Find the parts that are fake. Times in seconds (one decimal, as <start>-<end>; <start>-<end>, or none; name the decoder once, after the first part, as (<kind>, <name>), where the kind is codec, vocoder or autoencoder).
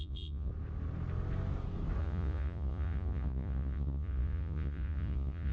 0.0-0.5 (vocoder, Vocos); 2.0-5.5